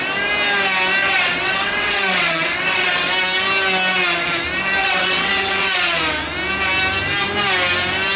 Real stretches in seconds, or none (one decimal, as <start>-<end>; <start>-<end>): 0.0-1.0; 3.1-4.8; 6.0-8.2